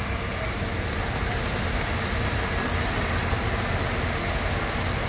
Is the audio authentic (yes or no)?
yes